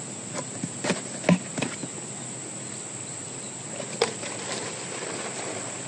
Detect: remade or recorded recorded